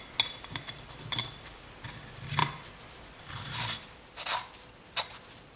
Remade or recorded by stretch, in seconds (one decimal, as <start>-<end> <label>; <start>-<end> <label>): 0.0-5.6 recorded